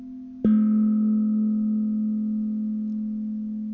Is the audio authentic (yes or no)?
yes